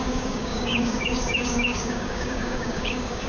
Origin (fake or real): fake